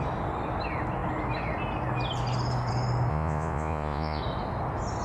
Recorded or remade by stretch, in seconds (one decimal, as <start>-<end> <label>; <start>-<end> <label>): 0.0-3.1 recorded; 3.1-4.2 remade; 4.2-5.0 recorded